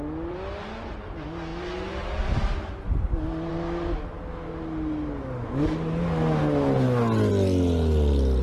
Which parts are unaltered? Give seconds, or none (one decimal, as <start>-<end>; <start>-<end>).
0.0-8.4